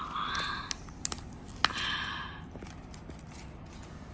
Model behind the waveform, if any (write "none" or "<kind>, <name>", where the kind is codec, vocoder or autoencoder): none